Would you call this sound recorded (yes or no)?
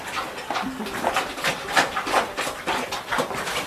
yes